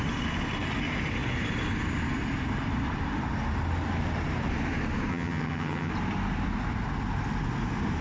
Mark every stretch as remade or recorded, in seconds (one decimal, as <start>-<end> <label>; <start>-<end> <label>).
0.0-5.1 recorded; 5.1-5.9 remade; 5.9-8.0 recorded